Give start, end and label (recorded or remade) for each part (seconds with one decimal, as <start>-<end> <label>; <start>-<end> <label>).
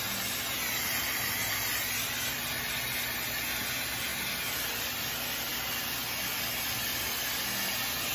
0.0-4.1 recorded; 4.1-5.1 remade; 5.1-8.1 recorded